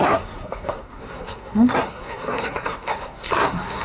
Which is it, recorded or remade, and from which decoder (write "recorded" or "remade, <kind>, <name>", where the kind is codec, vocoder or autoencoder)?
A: remade, codec, SNAC